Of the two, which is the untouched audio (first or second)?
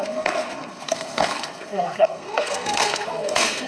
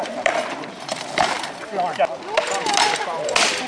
second